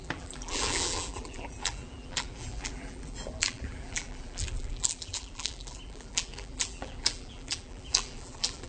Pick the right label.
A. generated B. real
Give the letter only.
A